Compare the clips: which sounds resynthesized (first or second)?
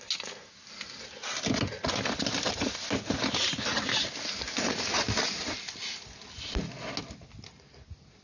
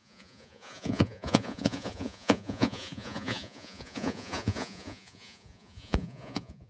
second